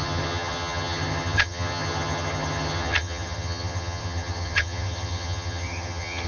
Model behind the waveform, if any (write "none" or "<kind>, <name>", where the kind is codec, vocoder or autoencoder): vocoder, HiFi-GAN